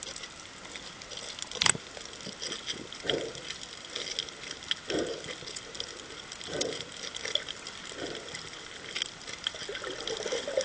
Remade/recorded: recorded